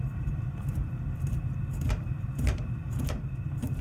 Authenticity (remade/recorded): remade